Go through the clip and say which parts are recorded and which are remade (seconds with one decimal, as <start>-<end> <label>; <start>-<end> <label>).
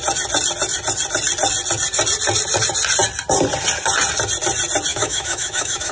0.0-4.9 recorded; 4.9-5.9 remade